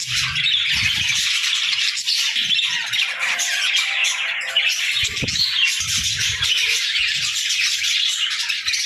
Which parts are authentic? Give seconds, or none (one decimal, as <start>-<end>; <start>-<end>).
0.0-1.4; 2.5-6.9; 7.6-8.9